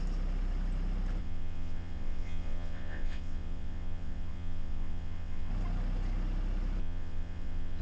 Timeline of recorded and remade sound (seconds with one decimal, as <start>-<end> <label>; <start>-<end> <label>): 0.0-1.2 recorded; 1.2-5.5 remade; 5.5-6.8 recorded; 6.8-7.8 remade